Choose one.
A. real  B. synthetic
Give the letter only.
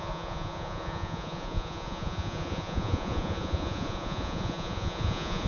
B